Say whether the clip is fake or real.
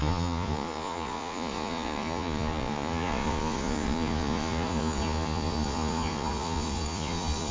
fake